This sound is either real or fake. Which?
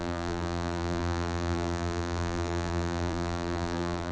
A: fake